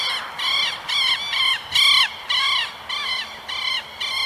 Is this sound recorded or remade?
recorded